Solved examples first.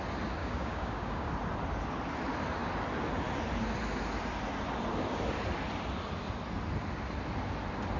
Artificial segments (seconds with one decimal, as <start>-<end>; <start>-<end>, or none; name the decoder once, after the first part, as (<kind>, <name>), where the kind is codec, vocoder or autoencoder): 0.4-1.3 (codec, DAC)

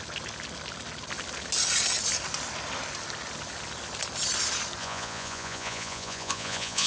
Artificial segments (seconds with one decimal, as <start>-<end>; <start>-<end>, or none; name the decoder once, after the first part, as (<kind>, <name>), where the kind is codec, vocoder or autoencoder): 4.8-6.9 (vocoder, Vocos)

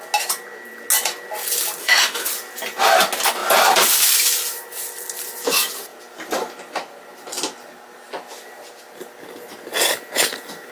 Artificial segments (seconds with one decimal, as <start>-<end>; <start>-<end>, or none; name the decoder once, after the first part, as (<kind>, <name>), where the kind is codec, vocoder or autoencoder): 1.8-2.3 (autoencoder, DAC-VAE)